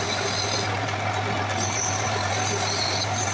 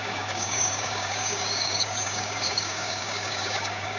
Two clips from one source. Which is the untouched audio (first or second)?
first